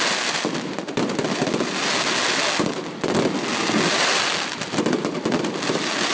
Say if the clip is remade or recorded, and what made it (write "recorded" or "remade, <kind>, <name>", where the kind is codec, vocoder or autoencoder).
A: recorded